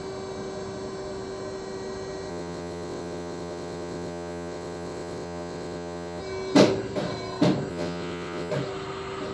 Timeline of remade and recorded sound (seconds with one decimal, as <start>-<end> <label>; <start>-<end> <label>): 0.0-2.3 recorded; 2.3-6.2 remade; 6.2-7.7 recorded; 7.7-8.5 remade; 8.5-9.3 recorded